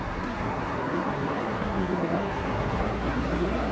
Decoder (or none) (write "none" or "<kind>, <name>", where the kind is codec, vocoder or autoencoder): codec, SNAC